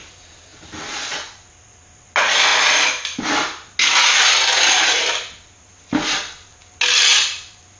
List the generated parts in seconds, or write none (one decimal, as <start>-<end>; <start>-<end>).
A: 0.5-2.1; 2.5-3.2